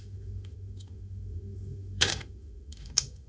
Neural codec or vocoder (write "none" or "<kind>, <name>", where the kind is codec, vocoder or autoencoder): autoencoder, DAC-VAE